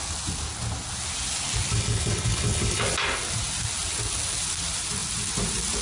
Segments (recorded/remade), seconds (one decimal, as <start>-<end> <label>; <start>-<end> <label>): 0.0-1.7 recorded; 1.7-2.8 remade; 2.8-5.8 recorded